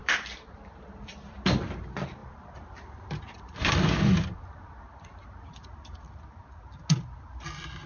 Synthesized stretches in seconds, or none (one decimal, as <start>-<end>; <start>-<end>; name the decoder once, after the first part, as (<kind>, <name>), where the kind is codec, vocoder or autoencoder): 0.0-0.8 (vocoder, BigVGAN v2); 2.2-6.2